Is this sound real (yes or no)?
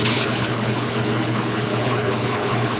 no